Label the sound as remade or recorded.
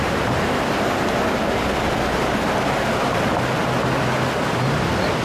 recorded